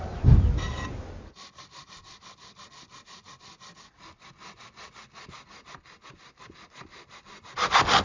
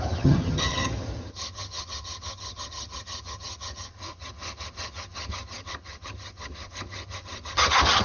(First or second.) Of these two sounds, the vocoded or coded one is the second